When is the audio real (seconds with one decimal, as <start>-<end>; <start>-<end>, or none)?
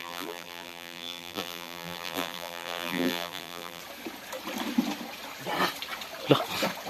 3.8-6.9